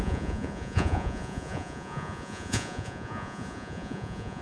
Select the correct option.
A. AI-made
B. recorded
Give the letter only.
A